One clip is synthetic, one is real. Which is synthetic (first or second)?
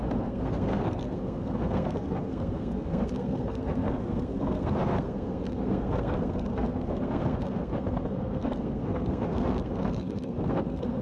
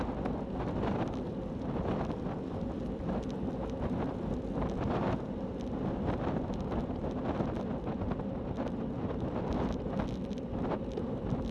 first